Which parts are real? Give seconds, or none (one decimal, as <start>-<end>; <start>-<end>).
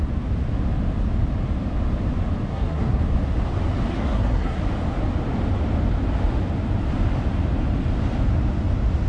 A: 0.0-2.5; 3.0-3.9; 4.6-9.1